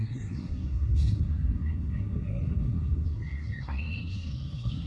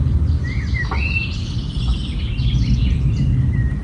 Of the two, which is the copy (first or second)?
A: first